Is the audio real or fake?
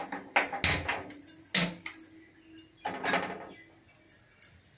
real